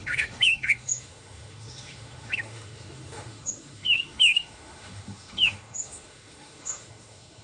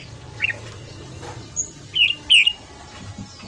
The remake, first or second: first